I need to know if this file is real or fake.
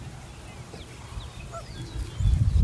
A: real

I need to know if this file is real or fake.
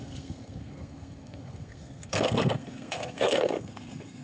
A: fake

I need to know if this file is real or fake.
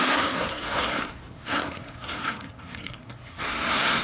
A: fake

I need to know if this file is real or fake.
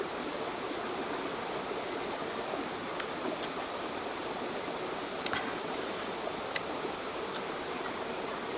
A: real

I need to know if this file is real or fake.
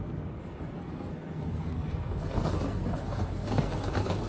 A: fake